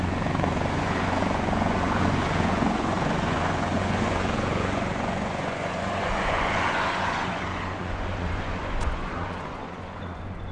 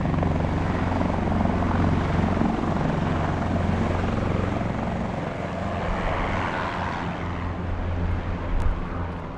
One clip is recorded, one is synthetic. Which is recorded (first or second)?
second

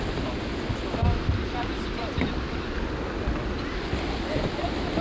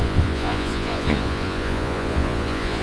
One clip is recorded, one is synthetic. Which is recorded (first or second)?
first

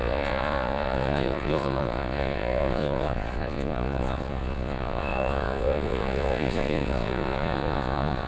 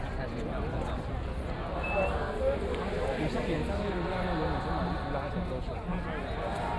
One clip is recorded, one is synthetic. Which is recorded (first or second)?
second